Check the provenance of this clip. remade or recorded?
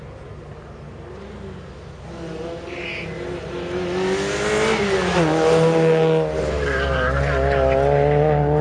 recorded